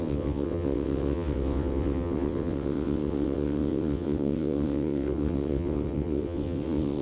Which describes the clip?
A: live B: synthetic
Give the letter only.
B